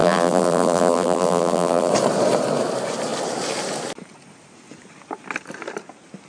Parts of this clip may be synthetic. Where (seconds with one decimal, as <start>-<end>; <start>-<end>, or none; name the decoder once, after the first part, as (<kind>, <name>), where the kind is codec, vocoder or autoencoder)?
0.0-1.9 (vocoder, BigVGAN v2)